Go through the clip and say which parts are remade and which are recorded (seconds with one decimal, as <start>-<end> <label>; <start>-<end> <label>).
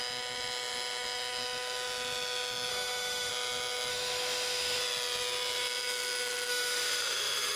0.0-2.7 recorded; 2.7-3.3 remade; 3.3-3.9 recorded; 3.9-4.8 remade; 4.8-6.5 recorded; 6.5-7.6 remade